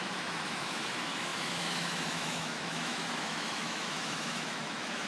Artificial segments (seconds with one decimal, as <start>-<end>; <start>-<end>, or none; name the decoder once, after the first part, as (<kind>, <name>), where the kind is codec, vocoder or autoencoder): 0.0-5.1 (autoencoder, DAC-VAE)